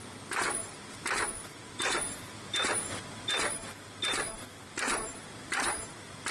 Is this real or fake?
real